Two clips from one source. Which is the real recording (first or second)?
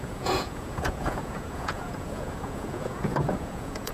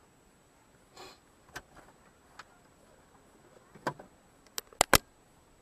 second